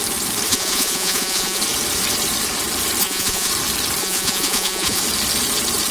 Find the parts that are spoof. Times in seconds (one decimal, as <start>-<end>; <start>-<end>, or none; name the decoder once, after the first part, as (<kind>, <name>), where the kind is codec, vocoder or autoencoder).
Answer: 0.5-1.6 (vocoder, Vocos); 3.0-3.5; 4.0-5.0

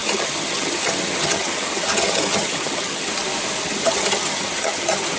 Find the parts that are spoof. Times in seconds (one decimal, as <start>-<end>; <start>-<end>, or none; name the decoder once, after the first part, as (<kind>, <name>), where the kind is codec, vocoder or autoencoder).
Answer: 0.0-3.1 (vocoder, HiFi-GAN); 3.6-5.2